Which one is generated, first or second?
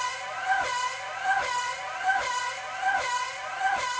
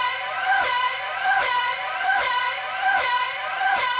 second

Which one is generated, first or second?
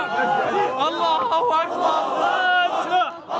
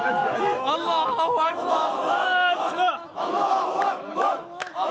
second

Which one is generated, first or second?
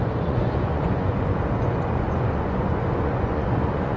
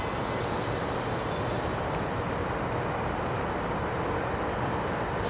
first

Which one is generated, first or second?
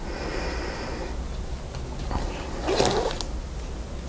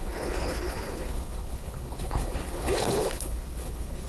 second